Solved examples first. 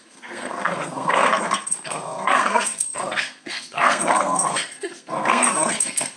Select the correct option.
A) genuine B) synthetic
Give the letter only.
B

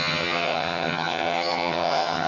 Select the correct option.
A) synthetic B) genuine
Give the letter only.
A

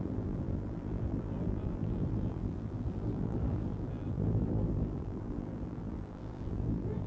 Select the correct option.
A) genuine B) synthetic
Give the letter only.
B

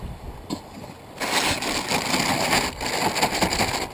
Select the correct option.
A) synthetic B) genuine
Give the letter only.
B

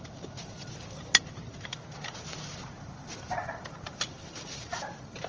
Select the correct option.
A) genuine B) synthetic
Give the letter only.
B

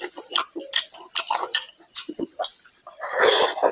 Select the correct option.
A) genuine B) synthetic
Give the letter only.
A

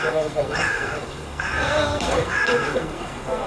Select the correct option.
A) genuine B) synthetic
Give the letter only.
B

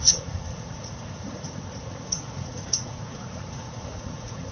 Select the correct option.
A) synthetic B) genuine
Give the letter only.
A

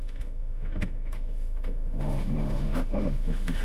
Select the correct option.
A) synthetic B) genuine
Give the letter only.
A